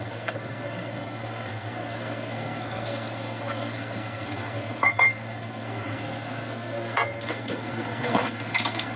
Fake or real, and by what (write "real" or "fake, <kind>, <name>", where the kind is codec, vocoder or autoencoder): fake, codec, SNAC